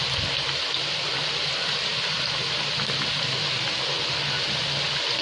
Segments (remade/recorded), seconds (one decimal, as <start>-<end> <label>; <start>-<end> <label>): 0.0-5.2 recorded